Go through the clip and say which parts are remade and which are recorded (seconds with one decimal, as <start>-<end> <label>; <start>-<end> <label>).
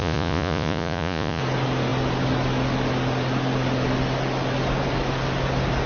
0.0-1.4 remade; 1.4-5.9 recorded